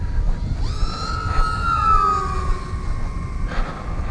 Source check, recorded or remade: recorded